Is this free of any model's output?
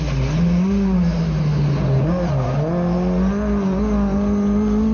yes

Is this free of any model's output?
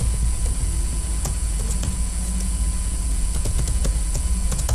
no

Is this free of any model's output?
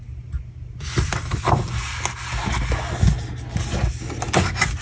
yes